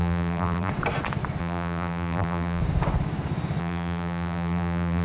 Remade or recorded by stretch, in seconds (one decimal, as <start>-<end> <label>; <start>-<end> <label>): 0.0-0.7 remade; 0.7-1.4 recorded; 1.4-2.6 remade; 2.6-3.6 recorded; 3.6-5.0 remade